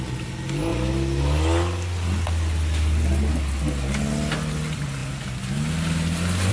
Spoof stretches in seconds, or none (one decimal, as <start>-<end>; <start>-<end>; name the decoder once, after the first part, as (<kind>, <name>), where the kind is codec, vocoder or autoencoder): none